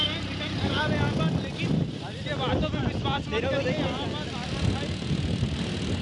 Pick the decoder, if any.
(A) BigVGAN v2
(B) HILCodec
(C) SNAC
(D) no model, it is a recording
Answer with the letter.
D